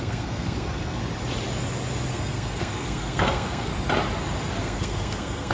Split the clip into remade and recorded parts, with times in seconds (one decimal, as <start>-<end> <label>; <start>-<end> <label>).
0.0-1.0 remade; 1.0-2.1 recorded; 2.1-3.7 remade; 3.7-4.6 recorded; 4.6-5.5 remade

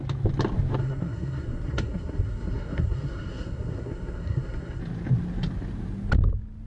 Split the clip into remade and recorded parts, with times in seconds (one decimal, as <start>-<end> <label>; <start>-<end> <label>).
0.0-0.8 recorded; 0.8-4.8 remade; 4.8-6.7 recorded